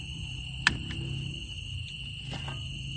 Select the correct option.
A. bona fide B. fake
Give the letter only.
A